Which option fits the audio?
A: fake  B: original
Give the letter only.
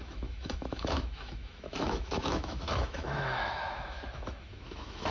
A